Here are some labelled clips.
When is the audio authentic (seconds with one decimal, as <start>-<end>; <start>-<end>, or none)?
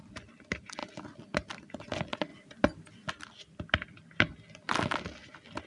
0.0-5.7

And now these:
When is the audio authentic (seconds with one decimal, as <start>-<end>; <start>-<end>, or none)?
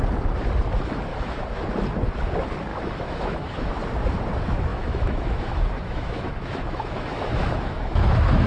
0.0-1.1; 1.6-2.7; 3.7-4.7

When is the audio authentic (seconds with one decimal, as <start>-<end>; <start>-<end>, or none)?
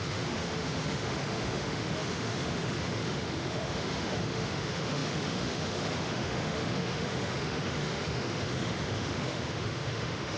none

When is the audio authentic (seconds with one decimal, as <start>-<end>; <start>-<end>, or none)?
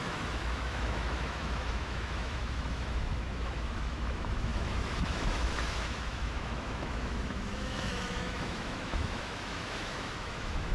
none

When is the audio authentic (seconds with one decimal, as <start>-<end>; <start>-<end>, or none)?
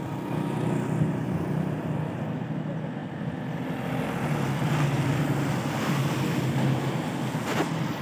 0.0-8.0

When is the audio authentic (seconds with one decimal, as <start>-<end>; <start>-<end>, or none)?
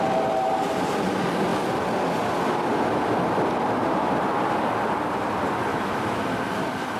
0.0-5.7; 6.2-7.0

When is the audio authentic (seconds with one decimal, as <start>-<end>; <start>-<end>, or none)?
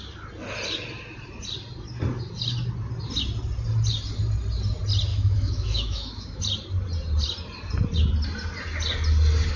0.0-5.1; 6.4-9.6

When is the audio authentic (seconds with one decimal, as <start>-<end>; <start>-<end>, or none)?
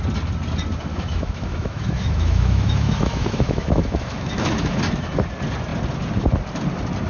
0.0-0.9; 4.8-7.1